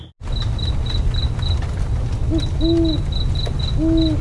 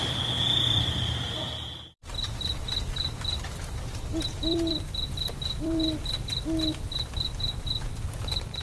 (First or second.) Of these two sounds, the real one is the first